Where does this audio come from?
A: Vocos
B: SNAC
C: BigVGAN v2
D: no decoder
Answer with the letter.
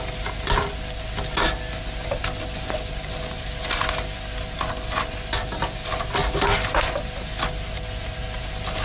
D